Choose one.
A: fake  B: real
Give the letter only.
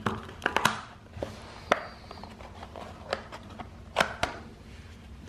B